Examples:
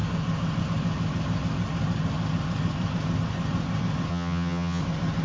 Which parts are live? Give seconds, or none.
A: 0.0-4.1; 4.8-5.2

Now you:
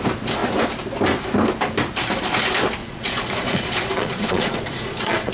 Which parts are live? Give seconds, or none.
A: 0.0-2.8

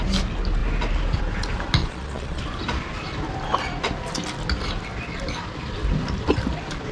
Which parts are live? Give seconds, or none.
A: 0.0-1.8; 2.4-6.9

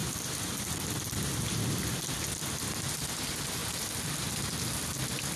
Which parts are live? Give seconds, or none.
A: 0.0-5.4

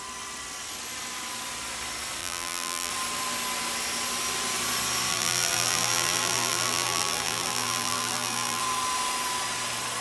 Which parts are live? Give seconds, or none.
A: 0.0-2.2; 2.9-5.1; 8.6-10.0